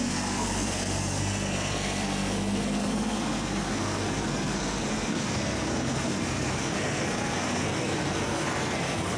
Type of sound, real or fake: fake